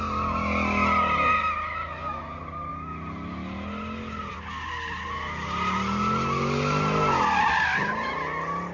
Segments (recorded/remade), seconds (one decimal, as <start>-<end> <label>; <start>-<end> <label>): 0.0-8.7 recorded